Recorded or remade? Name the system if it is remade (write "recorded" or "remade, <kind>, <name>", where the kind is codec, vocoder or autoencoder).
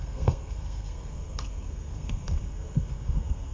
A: remade, codec, SNAC